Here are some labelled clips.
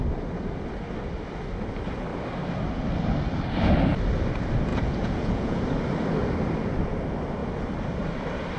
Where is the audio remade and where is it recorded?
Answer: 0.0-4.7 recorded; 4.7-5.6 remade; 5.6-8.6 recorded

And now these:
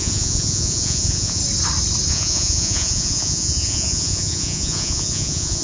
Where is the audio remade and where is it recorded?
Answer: 0.0-1.4 remade; 1.4-2.1 recorded; 2.1-5.6 remade